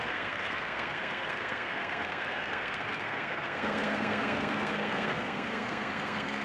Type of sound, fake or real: fake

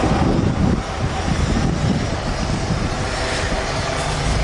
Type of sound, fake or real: fake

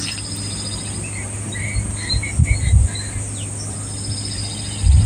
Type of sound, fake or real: real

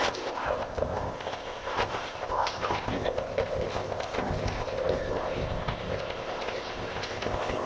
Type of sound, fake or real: fake